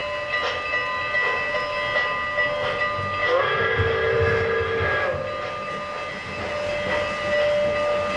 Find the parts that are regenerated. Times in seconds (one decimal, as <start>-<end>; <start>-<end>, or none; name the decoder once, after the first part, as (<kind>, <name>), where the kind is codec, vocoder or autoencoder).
none